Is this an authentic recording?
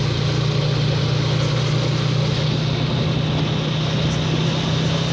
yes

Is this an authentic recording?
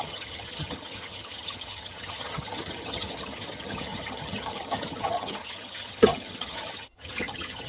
no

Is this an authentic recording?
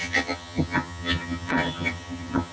no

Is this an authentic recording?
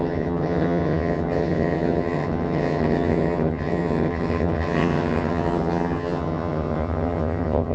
no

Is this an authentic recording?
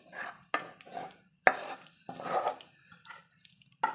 yes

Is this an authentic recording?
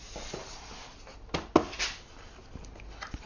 yes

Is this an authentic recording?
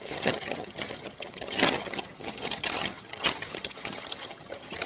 no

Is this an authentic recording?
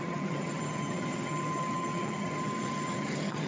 no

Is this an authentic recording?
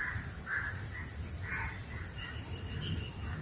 yes